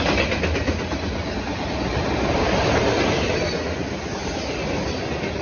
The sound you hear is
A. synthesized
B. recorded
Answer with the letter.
B